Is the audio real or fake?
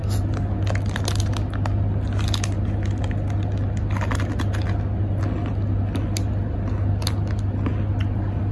real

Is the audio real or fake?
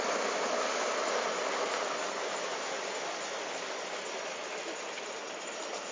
real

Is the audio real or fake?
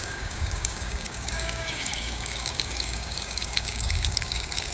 fake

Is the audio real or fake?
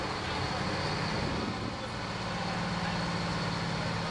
real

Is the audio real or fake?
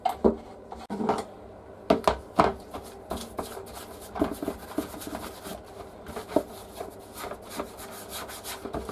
real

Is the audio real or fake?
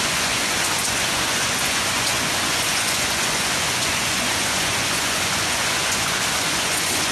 fake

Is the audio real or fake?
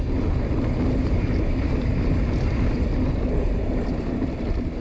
real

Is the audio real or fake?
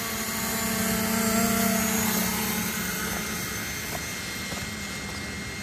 real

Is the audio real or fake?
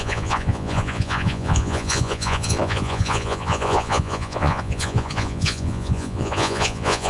fake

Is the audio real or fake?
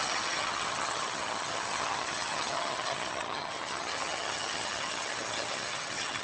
fake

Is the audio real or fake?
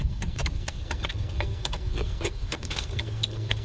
fake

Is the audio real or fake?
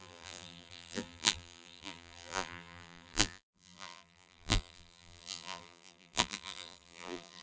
fake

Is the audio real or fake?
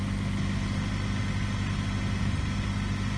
real